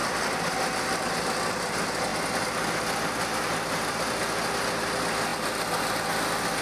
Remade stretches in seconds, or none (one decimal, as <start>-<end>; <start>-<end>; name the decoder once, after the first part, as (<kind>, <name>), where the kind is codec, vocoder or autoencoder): none